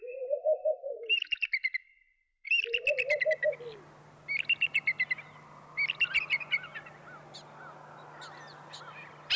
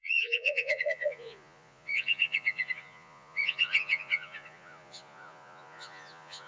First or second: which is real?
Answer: first